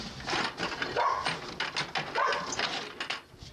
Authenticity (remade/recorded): recorded